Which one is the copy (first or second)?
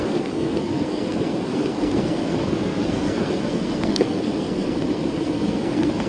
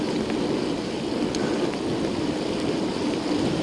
first